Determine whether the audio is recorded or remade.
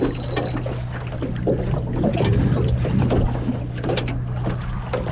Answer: recorded